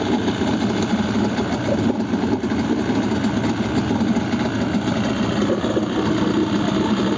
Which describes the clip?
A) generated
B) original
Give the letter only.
B